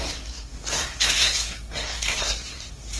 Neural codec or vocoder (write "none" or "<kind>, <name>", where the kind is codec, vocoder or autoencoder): codec, SNAC